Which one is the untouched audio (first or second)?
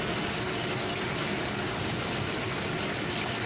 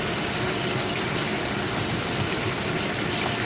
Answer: first